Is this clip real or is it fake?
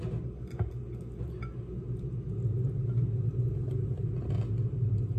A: real